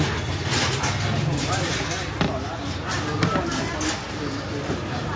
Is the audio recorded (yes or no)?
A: yes